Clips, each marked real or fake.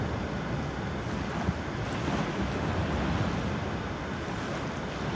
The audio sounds real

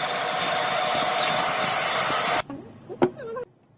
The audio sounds real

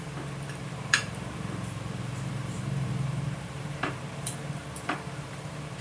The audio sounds fake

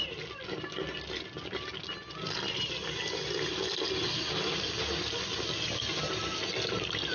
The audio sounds real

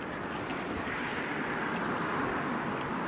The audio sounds real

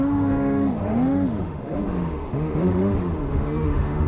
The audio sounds fake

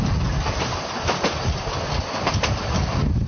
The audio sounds real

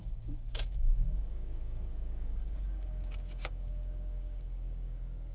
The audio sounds fake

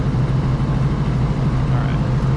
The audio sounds real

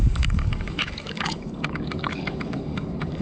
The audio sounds fake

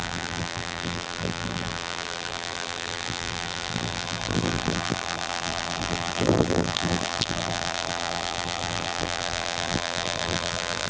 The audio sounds fake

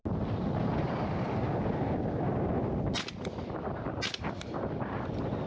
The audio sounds real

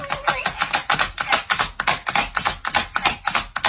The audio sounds real